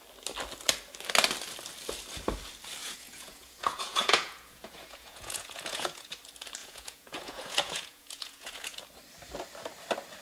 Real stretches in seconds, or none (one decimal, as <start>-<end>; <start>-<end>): 0.0-2.8; 6.1-6.6; 8.8-10.2

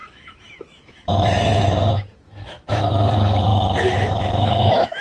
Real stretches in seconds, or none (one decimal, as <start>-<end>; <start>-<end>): 3.0-3.5